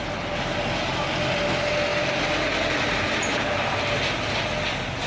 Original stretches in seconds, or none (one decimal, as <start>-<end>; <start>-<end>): 0.0-5.1